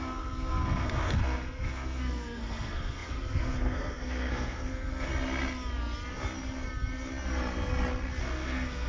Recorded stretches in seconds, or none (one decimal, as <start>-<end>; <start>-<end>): 5.1-8.2